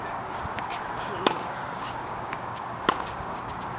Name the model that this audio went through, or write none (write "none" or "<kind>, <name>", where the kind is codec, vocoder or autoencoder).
codec, DAC